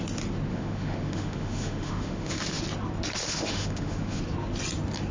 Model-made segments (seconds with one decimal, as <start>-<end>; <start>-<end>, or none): 0.5-2.6; 3.2-4.2

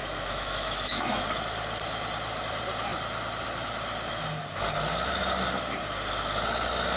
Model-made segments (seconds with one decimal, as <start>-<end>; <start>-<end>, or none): 0.0-1.2

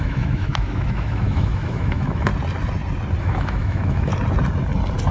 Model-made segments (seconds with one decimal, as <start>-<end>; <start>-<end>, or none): 0.0-2.3; 3.2-4.1

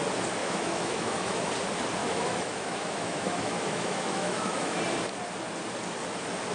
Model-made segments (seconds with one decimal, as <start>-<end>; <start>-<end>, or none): 0.4-1.5; 2.0-4.8

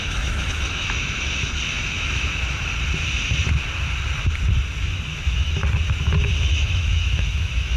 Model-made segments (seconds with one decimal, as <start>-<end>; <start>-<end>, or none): 0.0-2.7; 4.8-5.6; 6.4-7.8

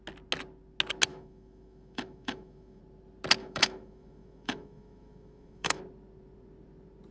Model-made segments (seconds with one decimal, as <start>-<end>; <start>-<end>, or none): 1.1-2.8; 3.4-5.8